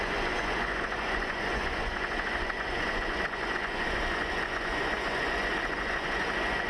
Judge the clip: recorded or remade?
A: remade